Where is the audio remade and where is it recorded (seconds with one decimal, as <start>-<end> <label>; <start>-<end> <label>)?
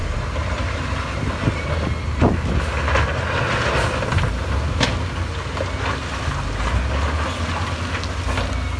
0.0-1.3 remade; 1.3-8.8 recorded